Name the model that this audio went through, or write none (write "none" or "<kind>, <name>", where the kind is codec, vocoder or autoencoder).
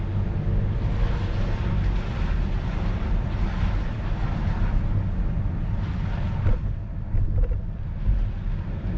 none